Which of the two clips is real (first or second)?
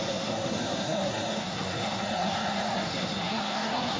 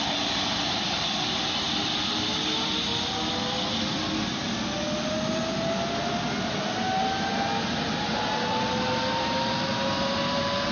second